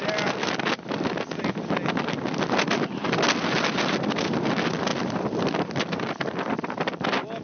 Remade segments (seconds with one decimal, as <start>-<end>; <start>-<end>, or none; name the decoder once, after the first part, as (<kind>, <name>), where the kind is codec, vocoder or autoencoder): none